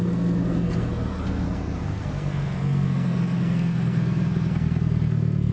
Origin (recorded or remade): remade